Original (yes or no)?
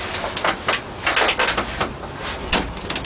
yes